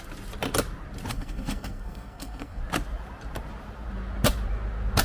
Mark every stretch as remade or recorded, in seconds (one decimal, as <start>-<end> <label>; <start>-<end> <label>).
0.0-1.1 recorded; 1.1-2.6 remade; 2.6-5.0 recorded